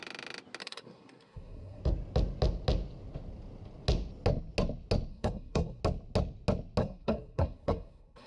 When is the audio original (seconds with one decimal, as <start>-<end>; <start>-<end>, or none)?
0.0-0.6; 1.8-5.1; 5.8-6.8